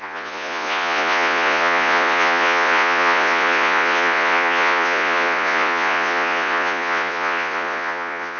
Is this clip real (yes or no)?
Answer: no